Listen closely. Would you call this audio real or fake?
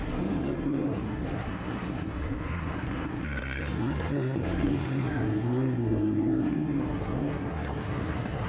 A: fake